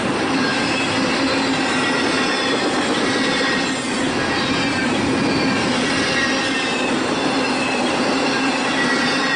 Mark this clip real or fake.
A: real